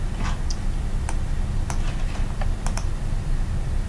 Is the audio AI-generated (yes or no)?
no